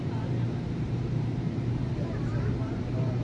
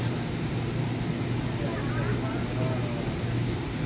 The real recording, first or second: second